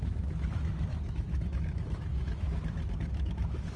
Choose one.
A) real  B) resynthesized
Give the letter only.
B